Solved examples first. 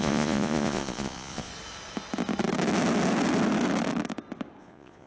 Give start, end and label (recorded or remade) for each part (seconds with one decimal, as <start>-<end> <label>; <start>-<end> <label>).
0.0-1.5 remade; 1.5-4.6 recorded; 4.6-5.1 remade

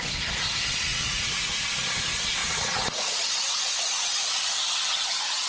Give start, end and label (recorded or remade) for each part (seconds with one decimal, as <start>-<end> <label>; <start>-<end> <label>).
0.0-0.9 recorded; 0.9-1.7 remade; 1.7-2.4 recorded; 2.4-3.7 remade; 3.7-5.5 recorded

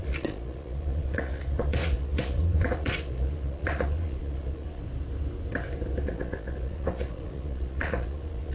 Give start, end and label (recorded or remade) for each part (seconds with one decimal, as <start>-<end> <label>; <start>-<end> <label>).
0.0-4.8 remade; 4.8-6.0 recorded; 6.0-8.5 remade

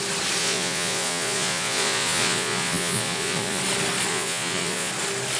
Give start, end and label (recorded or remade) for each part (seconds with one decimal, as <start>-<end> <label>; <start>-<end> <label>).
0.0-0.4 recorded; 0.4-3.6 remade; 3.6-4.1 recorded; 4.1-4.9 remade; 4.9-5.4 recorded